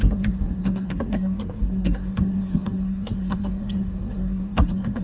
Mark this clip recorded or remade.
remade